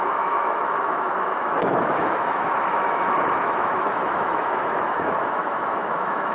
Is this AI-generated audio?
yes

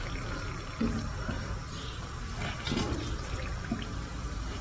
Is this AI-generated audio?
no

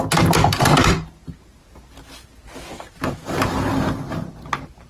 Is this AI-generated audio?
no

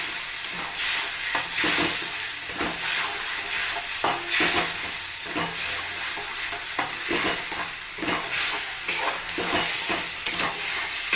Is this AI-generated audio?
no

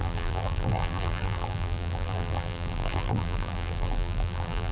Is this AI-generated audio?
yes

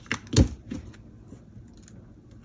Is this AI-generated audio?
no